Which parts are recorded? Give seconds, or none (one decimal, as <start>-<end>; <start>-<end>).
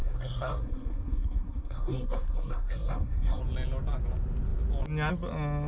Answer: 3.4-5.7